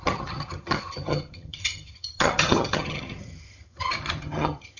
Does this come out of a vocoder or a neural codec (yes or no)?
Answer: yes